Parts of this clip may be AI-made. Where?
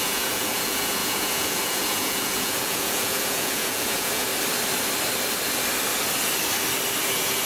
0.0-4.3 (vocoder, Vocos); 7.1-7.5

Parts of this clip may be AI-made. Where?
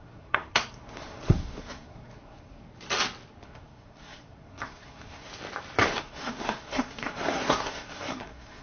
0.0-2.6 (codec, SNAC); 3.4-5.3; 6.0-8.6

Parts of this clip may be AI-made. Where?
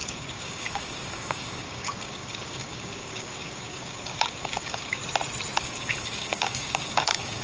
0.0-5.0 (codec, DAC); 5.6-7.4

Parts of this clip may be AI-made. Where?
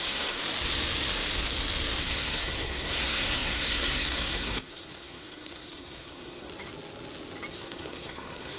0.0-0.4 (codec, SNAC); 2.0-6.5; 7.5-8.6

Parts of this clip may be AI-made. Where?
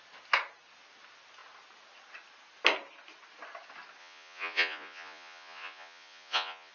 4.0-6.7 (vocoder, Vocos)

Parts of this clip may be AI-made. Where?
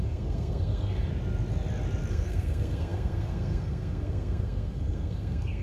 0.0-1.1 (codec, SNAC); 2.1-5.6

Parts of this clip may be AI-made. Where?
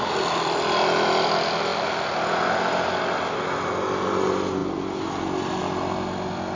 none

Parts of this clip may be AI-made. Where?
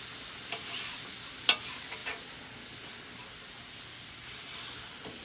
none